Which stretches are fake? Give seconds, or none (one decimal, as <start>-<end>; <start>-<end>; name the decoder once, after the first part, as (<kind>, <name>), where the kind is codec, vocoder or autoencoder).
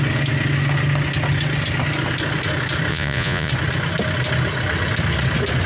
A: 2.9-3.5 (vocoder, Vocos)